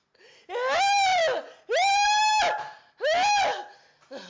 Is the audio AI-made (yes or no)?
no